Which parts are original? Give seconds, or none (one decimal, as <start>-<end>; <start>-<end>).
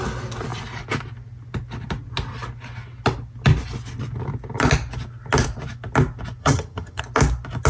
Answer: 0.0-6.4; 7.0-7.7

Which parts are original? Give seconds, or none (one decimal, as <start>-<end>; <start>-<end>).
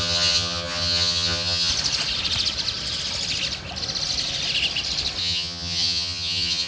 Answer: 1.7-5.2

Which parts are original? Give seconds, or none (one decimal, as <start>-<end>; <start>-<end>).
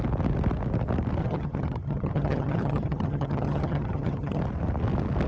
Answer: 0.0-1.2; 4.4-5.3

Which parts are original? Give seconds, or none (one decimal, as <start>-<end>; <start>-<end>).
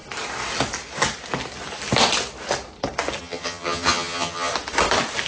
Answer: 0.0-3.2; 4.5-5.3